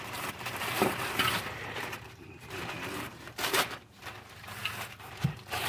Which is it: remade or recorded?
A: remade